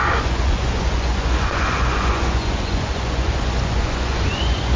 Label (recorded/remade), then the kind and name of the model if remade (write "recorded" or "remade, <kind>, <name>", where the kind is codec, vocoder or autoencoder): remade, vocoder, Vocos